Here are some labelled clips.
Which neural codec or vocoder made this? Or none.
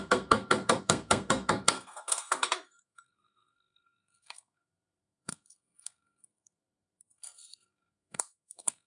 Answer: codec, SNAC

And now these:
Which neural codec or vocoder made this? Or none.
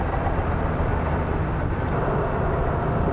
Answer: none